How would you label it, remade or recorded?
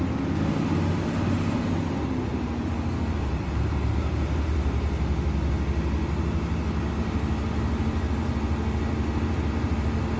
recorded